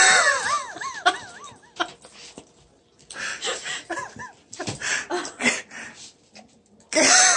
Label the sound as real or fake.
real